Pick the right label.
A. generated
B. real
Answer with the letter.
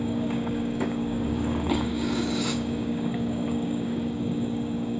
A